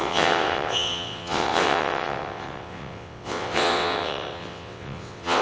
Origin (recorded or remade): remade